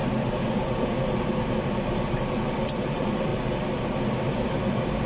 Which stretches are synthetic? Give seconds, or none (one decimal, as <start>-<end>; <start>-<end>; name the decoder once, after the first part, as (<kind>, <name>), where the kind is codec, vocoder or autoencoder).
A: 1.6-3.3 (vocoder, BigVGAN v2); 3.8-5.1